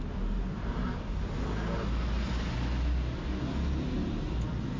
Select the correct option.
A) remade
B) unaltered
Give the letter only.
B